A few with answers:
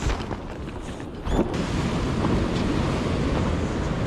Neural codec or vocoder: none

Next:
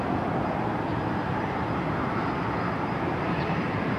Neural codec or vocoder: none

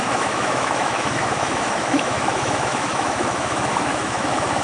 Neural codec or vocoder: autoencoder, DAC-VAE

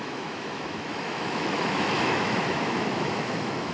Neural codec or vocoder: autoencoder, DAC-VAE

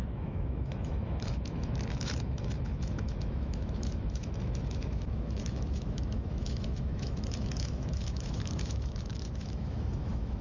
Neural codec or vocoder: autoencoder, DAC-VAE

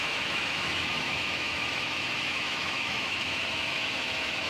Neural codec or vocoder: autoencoder, DAC-VAE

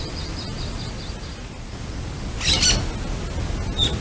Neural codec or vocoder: none